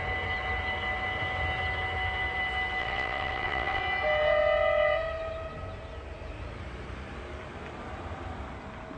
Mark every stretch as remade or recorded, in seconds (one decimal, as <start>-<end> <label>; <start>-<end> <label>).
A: 0.0-2.8 recorded; 2.8-3.8 remade; 3.8-9.0 recorded